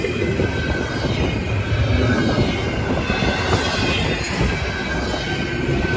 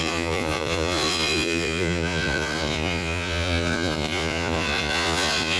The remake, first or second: second